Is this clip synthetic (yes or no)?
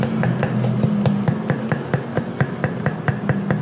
no